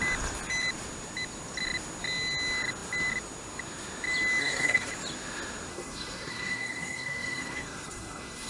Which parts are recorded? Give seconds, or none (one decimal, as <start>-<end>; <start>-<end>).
0.0-4.4; 4.9-5.7